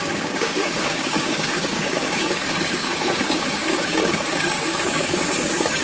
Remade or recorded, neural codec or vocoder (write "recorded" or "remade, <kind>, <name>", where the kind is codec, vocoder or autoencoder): remade, codec, DAC